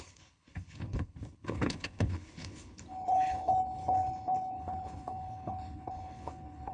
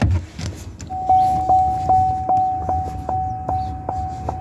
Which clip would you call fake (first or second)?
first